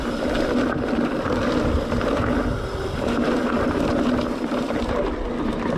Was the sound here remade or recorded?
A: recorded